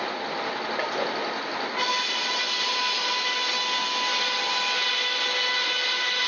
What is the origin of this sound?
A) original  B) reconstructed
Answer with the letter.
A